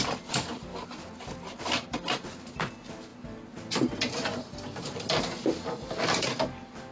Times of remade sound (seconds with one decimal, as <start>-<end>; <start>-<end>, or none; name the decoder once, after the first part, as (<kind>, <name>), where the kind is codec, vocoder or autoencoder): none